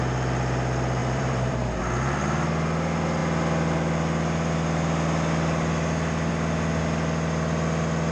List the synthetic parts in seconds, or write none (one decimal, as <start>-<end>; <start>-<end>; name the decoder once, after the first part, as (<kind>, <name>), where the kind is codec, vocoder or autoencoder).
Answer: 1.0-1.8 (vocoder, BigVGAN v2)